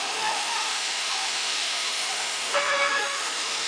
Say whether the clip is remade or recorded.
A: remade